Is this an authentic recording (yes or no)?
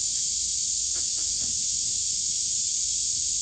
no